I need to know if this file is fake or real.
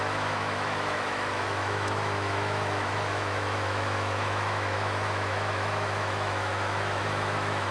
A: fake